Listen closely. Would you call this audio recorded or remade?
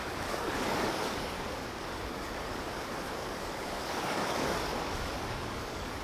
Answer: remade